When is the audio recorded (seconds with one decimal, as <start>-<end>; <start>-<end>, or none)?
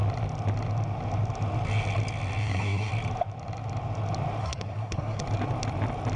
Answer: 0.0-2.4; 2.9-4.4; 5.2-6.2